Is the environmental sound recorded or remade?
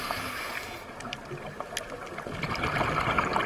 recorded